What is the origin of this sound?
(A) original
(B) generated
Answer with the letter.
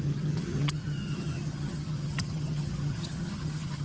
B